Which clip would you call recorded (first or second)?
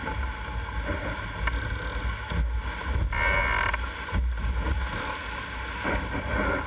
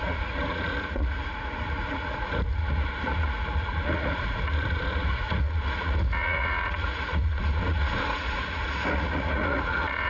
first